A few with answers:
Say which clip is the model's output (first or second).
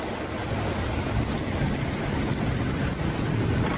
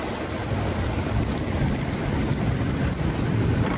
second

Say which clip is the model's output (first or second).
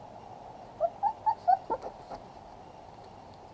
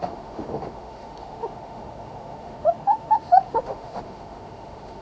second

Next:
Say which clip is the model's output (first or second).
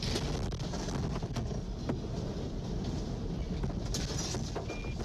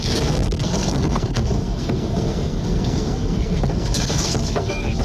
second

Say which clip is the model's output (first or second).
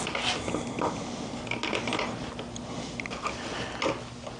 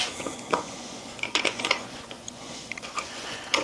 second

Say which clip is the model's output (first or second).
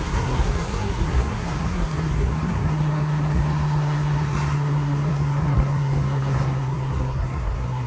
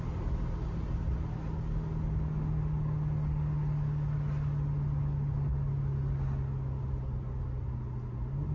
first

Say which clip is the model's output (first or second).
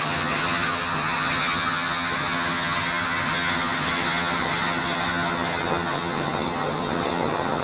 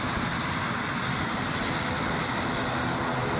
first